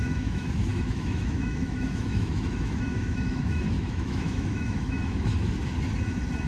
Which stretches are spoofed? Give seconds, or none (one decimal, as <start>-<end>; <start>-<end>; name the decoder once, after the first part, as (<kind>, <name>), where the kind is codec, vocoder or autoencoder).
0.0-5.3 (autoencoder, DAC-VAE)